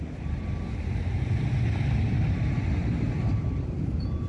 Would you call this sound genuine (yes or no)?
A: no